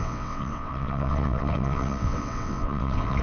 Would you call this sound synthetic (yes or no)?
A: yes